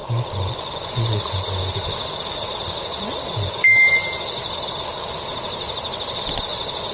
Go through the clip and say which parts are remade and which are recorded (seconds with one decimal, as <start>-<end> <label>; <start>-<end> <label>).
0.0-1.2 remade; 1.2-6.9 recorded